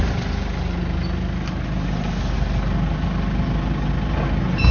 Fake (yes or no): no